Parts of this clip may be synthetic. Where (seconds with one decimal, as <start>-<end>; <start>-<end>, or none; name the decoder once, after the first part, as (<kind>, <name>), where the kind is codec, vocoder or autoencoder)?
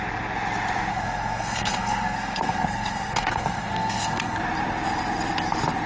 0.9-4.4 (codec, SNAC)